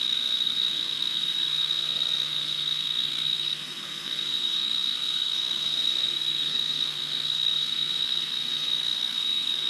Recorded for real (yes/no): no